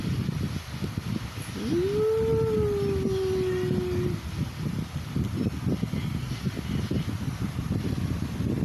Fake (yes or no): no